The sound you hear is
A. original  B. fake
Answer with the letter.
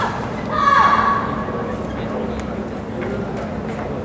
A